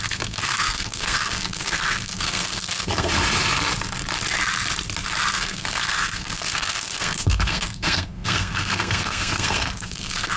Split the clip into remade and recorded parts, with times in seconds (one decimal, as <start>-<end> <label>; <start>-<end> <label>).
0.0-3.1 remade; 3.1-5.3 recorded; 5.3-10.4 remade